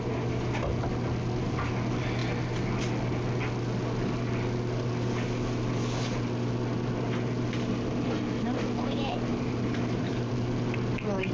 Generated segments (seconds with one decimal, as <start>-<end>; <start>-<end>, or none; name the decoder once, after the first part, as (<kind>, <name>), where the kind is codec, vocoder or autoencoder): 9.3-10.3 (vocoder, BigVGAN v2)